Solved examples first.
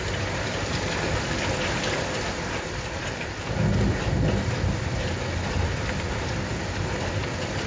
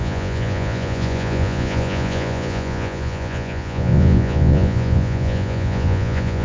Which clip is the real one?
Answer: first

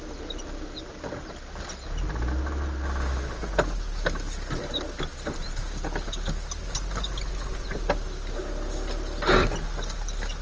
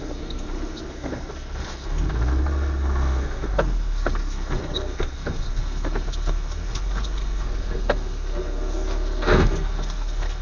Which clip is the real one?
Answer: first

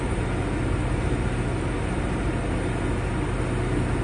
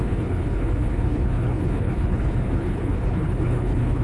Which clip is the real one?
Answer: first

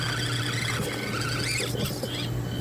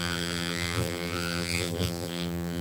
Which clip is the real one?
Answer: first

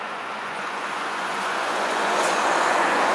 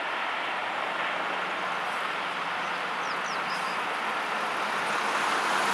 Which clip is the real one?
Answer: second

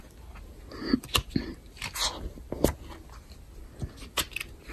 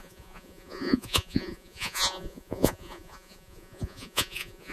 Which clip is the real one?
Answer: first